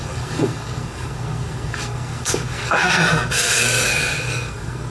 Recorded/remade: remade